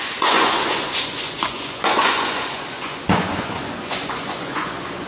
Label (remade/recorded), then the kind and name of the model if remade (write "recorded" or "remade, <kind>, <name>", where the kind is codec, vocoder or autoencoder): remade, vocoder, Vocos